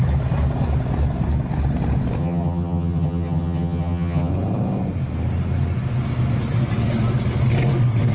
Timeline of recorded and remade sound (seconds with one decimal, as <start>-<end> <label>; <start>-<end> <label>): 0.0-2.2 recorded; 2.2-4.3 remade; 4.3-8.1 recorded